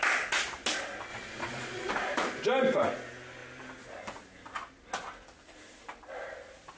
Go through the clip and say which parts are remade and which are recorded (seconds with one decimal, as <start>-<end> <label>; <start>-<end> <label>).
0.0-1.1 recorded; 1.1-1.9 remade; 1.9-6.8 recorded